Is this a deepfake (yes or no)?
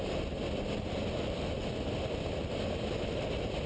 no